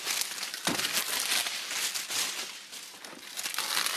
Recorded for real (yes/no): yes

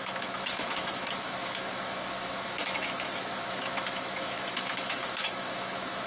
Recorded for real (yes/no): no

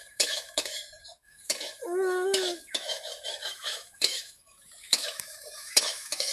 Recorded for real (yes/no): no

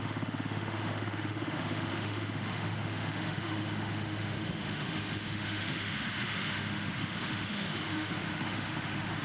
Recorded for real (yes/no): no